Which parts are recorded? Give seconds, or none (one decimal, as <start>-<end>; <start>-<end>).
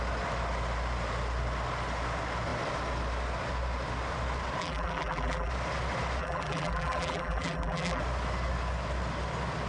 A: 0.0-4.6; 5.5-6.2; 8.0-9.7